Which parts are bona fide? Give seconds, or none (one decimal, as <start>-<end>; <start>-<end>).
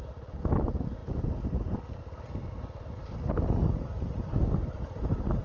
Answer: 0.0-5.4